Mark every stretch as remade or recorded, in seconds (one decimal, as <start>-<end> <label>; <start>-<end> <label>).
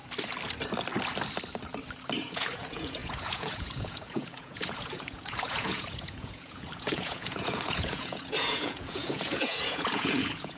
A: 0.0-2.2 recorded; 2.2-10.6 remade